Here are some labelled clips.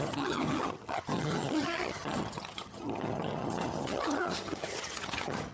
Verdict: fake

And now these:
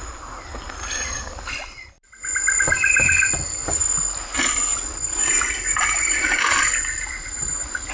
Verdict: real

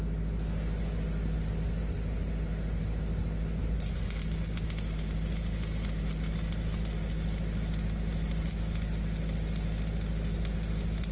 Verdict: real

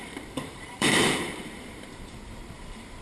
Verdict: fake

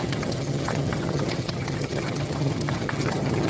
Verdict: fake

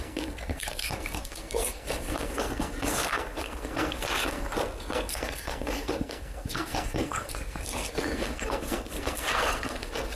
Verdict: fake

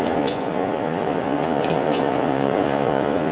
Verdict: fake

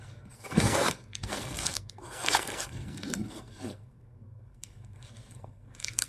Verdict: fake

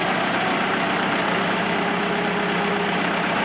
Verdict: real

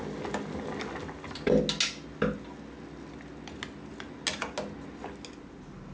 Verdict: real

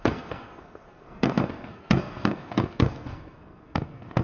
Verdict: fake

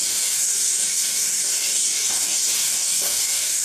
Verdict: fake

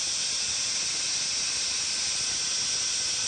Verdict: real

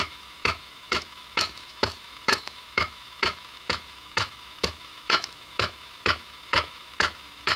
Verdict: fake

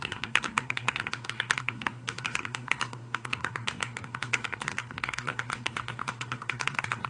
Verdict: fake